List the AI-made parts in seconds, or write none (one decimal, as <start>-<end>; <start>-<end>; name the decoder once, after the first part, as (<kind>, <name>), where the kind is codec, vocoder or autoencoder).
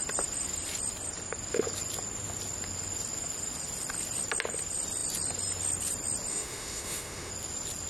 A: 6.3-7.3 (autoencoder, DAC-VAE)